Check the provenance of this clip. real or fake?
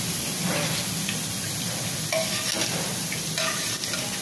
real